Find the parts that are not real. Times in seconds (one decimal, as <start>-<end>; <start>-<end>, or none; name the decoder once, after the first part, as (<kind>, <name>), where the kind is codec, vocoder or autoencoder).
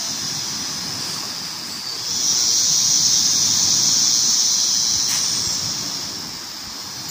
none